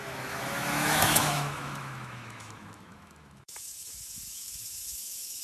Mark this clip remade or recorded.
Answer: remade